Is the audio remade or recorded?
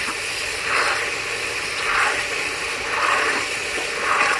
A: recorded